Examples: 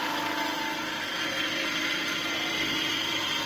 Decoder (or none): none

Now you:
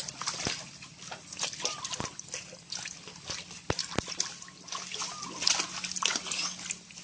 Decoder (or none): none